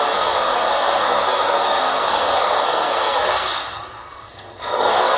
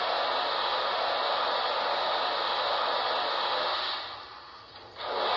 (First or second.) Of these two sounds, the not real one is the first